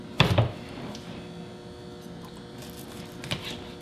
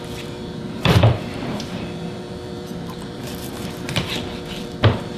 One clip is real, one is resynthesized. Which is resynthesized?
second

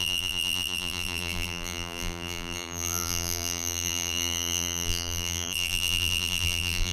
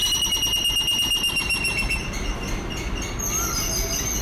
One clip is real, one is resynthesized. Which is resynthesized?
first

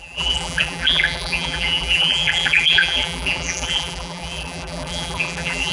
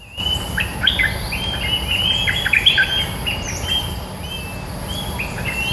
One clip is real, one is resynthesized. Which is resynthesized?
first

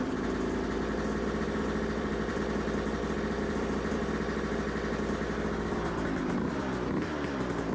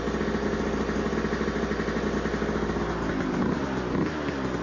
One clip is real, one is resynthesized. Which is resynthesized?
first